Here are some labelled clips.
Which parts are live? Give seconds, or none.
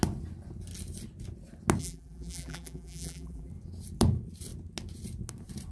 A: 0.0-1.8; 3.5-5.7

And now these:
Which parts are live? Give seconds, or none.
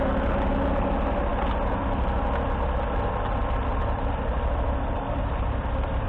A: 0.0-6.1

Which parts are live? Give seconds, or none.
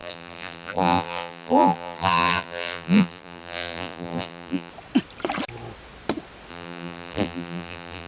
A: 4.7-6.5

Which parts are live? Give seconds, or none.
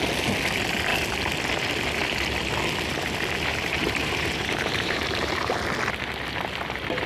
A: 0.0-3.5; 5.5-7.1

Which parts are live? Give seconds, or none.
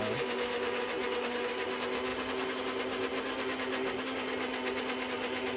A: 0.0-5.6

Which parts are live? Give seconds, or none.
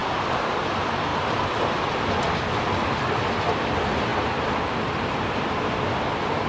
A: 0.0-4.1; 5.1-6.5